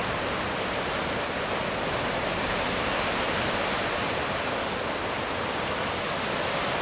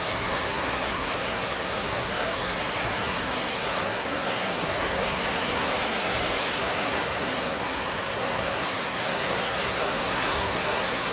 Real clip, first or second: first